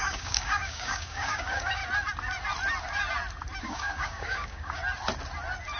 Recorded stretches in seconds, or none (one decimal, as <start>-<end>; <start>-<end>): 1.8-3.6; 4.8-5.8